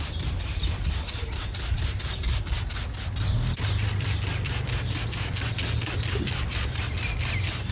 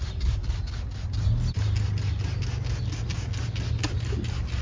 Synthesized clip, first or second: first